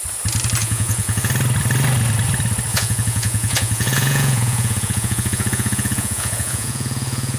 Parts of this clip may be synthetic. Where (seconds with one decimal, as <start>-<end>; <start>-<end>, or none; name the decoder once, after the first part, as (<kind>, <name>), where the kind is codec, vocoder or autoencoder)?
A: 0.6-1.3 (vocoder, Vocos); 2.7-7.4